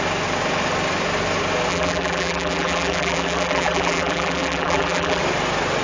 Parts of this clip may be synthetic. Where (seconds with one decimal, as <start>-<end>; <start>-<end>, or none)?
1.7-5.2